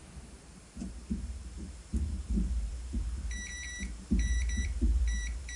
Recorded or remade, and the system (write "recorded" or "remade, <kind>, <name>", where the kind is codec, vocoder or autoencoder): remade, vocoder, BigVGAN v2